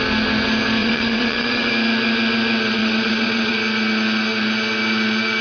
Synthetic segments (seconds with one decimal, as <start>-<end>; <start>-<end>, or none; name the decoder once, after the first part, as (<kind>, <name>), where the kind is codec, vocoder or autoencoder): 0.8-1.7 (vocoder, WaveNeXt); 2.8-3.5